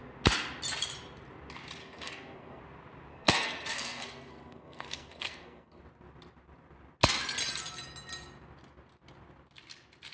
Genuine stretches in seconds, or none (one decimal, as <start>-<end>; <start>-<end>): 0.0-1.8; 2.6-3.1; 5.8-10.1